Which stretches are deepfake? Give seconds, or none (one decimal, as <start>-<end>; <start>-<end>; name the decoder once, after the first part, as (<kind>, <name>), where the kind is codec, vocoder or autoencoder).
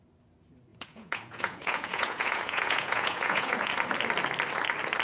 0.7-3.7 (vocoder, Vocos)